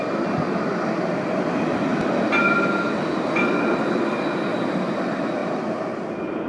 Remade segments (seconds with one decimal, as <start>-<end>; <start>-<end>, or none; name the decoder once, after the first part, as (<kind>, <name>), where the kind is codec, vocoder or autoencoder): none